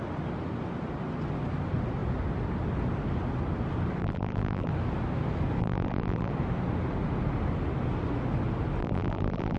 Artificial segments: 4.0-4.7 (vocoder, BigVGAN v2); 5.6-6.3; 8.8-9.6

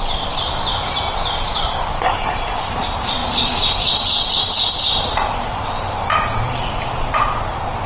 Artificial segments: 0.0-7.9 (vocoder, BigVGAN v2)

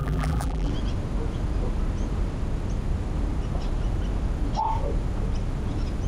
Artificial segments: 0.0-0.7 (vocoder, BigVGAN v2)

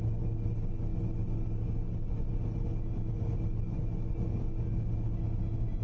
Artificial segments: none